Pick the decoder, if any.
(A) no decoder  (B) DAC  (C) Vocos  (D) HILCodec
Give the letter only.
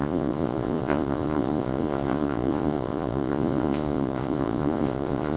C